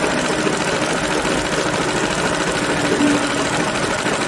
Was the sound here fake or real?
real